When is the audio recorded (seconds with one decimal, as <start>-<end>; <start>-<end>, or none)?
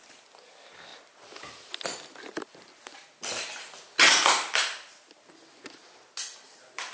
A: 0.0-6.9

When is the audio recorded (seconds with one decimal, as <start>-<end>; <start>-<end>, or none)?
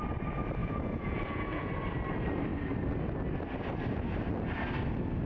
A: 0.0-0.6; 1.7-5.3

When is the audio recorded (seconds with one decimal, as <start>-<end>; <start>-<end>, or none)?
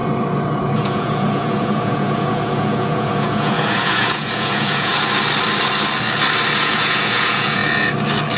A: 0.0-0.6; 4.9-6.6; 7.6-8.4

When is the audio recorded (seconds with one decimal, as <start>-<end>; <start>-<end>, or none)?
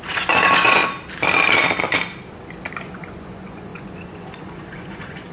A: 0.8-2.8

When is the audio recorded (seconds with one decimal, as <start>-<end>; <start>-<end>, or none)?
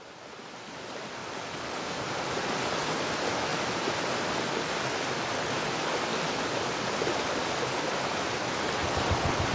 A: 0.0-9.5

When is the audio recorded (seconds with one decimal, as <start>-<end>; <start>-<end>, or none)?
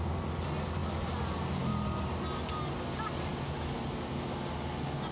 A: 0.0-5.1